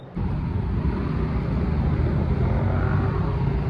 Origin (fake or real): real